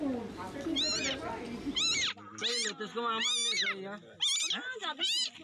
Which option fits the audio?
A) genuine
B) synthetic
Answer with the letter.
A